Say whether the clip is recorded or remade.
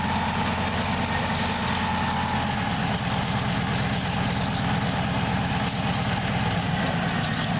recorded